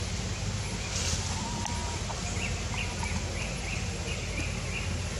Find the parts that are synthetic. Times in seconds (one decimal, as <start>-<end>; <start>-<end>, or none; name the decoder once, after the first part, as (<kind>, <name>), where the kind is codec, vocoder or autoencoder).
none